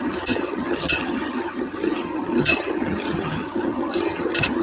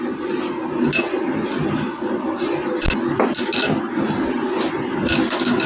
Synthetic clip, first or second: first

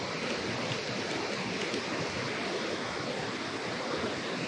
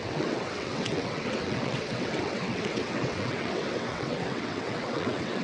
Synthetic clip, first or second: second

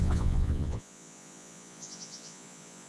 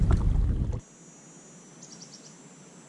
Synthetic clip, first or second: first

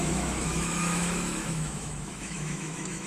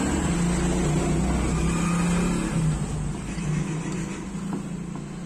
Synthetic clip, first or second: first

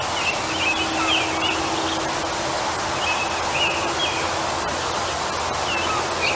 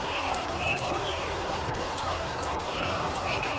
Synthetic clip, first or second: second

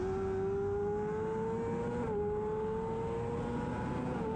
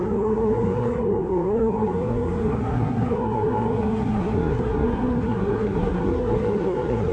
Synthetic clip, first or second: second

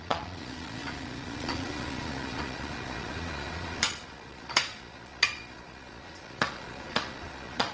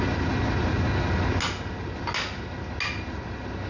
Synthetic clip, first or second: first